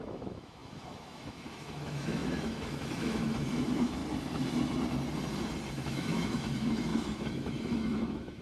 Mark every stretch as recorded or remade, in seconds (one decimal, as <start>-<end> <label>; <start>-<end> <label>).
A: 0.0-4.0 remade; 4.0-5.7 recorded; 5.7-8.4 remade